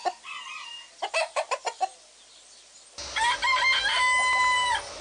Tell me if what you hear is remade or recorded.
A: recorded